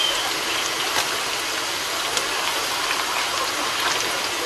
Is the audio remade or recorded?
recorded